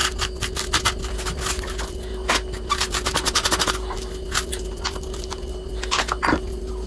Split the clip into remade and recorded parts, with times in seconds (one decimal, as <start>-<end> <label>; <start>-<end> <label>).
0.0-6.9 recorded